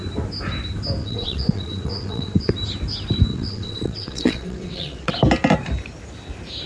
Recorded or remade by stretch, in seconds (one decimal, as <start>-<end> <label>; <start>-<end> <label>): 0.0-1.0 recorded; 1.0-2.5 remade; 2.5-3.3 recorded; 3.3-5.1 remade; 5.1-6.7 recorded